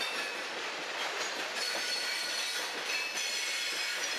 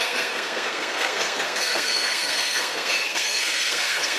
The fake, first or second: second